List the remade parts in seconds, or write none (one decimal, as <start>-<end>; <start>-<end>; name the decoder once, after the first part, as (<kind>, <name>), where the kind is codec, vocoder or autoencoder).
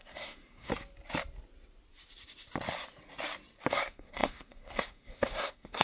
0.0-0.7 (codec, SNAC); 3.7-5.8